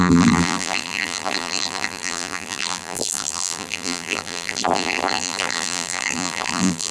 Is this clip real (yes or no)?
no